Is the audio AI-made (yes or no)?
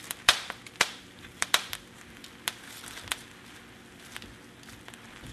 no